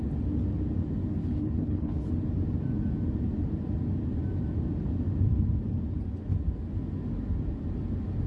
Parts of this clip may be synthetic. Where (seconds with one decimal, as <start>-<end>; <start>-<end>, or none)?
1.2-2.1